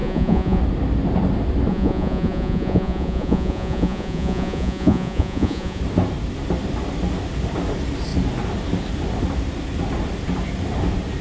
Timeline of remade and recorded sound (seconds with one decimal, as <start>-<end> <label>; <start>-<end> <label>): 0.0-0.6 remade; 0.6-1.7 recorded; 1.7-5.8 remade; 5.8-11.2 recorded